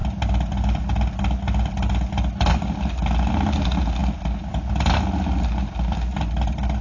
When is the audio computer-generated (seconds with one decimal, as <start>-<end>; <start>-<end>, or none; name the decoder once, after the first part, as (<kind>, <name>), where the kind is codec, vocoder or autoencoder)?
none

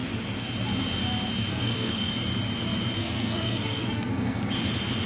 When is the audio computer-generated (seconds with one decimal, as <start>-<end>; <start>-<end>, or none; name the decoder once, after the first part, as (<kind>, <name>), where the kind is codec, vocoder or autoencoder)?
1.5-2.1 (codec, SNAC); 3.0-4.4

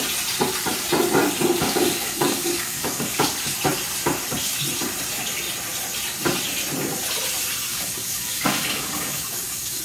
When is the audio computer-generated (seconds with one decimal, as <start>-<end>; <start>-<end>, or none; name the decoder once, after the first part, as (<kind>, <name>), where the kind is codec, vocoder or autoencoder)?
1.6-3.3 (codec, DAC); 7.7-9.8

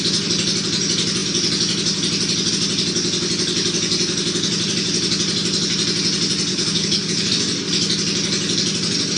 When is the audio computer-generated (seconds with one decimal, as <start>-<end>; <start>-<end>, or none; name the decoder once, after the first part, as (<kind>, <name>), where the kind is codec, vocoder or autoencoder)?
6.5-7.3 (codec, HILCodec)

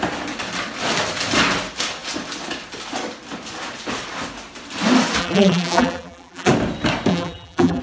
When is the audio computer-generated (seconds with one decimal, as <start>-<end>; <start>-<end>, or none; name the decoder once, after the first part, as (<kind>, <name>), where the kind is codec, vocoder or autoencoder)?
5.2-6.5 (vocoder, BigVGAN v2); 7.1-7.8

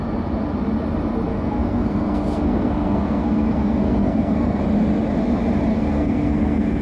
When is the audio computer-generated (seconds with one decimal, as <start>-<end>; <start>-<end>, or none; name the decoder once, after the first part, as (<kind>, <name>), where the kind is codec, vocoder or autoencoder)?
1.3-4.6 (codec, SNAC); 5.7-6.8

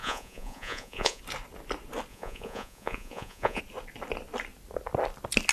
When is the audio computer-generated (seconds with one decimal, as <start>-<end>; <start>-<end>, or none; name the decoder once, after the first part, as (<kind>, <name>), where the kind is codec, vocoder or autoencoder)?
0.0-1.2 (vocoder, Vocos); 2.1-3.6

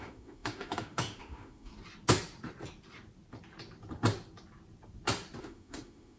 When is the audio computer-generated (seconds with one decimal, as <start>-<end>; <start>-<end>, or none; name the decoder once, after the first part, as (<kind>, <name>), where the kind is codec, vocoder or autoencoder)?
0.0-1.7 (autoencoder, DAC-VAE); 5.4-6.2